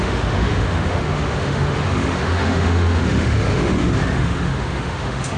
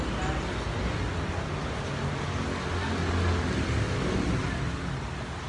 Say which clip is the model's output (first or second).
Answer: first